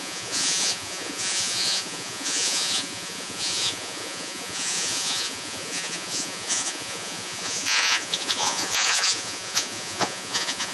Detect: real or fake fake